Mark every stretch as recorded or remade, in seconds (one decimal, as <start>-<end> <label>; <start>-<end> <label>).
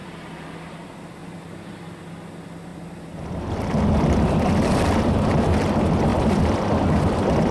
0.0-0.7 remade; 0.7-2.7 recorded; 2.7-5.1 remade; 5.1-6.1 recorded; 6.1-6.8 remade; 6.8-7.5 recorded